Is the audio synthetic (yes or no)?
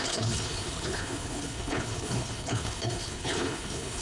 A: yes